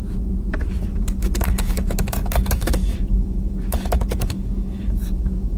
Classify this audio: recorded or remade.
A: remade